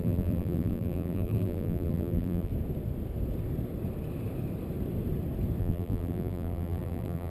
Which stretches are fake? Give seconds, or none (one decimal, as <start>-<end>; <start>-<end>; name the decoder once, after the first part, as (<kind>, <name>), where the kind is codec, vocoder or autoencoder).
0.0-2.5 (vocoder, BigVGAN v2); 5.6-7.3